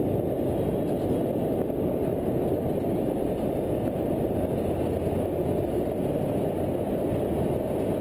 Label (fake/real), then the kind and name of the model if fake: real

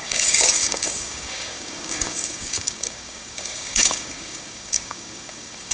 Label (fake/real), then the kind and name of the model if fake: fake, codec, DAC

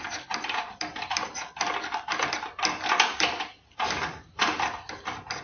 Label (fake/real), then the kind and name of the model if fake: real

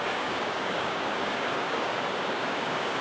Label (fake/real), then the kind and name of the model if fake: fake, codec, DAC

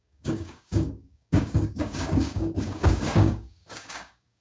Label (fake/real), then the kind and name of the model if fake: fake, codec, DAC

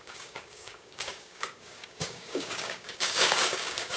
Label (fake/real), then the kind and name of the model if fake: fake, codec, DAC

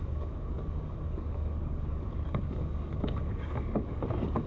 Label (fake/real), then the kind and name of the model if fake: fake, codec, DAC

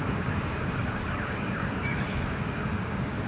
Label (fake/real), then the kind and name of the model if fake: fake, codec, DAC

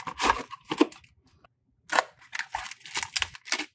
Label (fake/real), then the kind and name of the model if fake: real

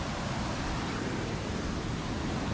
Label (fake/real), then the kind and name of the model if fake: real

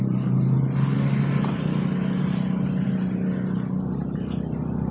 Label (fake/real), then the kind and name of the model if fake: real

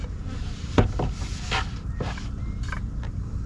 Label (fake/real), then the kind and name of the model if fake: real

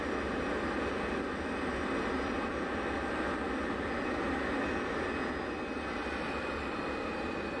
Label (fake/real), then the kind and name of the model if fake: real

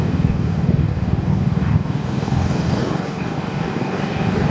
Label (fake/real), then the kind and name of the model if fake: fake, codec, DAC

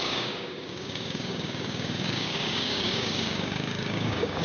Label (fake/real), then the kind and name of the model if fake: fake, codec, DAC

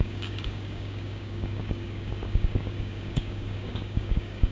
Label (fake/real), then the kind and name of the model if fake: fake, codec, DAC